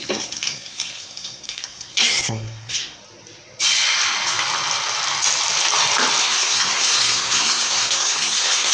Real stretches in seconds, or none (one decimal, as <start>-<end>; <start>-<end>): 3.0-6.2